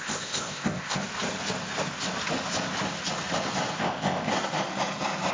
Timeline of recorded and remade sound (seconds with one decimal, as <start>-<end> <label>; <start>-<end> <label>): 0.0-1.0 remade; 1.0-3.8 recorded; 3.8-4.3 remade; 4.3-5.3 recorded